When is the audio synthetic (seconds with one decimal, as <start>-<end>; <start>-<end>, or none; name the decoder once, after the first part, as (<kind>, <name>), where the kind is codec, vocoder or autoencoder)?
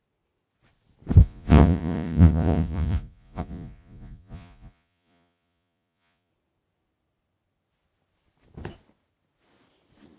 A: 1.2-6.3 (vocoder, Vocos)